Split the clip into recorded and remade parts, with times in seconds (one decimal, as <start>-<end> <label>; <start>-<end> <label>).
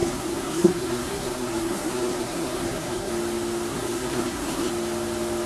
0.0-3.1 remade; 3.1-3.7 recorded; 3.7-4.7 remade; 4.7-5.5 recorded